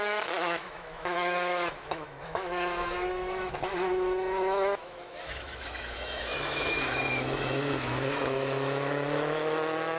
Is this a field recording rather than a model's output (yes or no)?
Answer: no